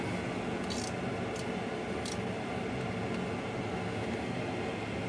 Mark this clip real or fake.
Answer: real